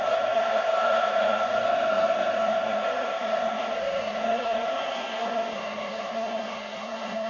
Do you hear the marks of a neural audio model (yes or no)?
yes